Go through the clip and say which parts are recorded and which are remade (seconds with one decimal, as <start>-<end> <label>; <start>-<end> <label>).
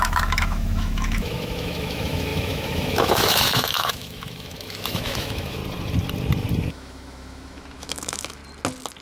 0.0-5.6 remade; 5.6-6.7 recorded; 6.7-8.4 remade; 8.4-9.0 recorded